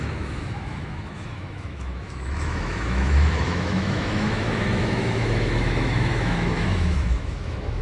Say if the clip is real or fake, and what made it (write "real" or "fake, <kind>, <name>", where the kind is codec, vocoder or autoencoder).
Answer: fake, autoencoder, DAC-VAE